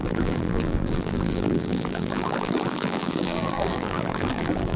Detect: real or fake fake